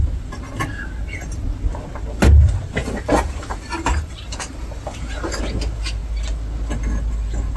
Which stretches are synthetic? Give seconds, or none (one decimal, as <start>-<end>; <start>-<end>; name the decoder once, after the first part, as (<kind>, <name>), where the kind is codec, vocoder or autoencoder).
2.8-5.4 (vocoder, BigVGAN v2)